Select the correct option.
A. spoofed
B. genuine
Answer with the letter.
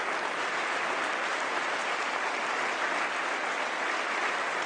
B